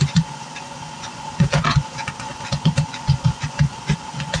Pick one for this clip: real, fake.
fake